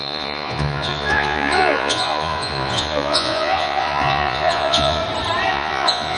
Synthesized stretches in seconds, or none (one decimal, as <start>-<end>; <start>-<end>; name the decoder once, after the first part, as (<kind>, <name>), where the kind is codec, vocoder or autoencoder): 0.0-5.0 (vocoder, Vocos); 5.5-6.2